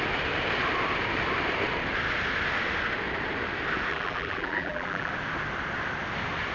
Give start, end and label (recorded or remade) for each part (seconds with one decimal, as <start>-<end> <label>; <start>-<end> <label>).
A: 0.0-3.9 recorded; 3.9-5.1 remade; 5.1-6.5 recorded